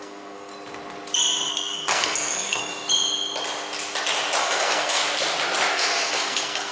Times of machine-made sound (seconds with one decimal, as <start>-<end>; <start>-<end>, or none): 0.0-0.5; 1.5-2.6; 4.4-5.0; 5.7-6.7